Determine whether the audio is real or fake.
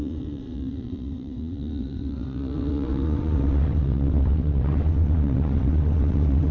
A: fake